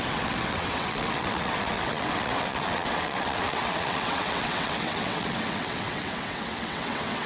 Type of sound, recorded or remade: remade